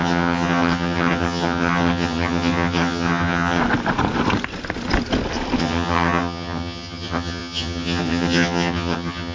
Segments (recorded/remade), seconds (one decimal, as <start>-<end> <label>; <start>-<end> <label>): 0.0-3.6 remade; 3.6-5.6 recorded; 5.6-9.3 remade